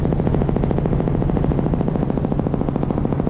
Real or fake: real